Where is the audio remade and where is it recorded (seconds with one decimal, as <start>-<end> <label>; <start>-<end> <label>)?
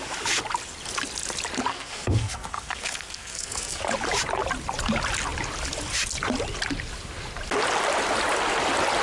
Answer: 0.0-1.7 recorded; 1.7-3.8 remade; 3.8-9.0 recorded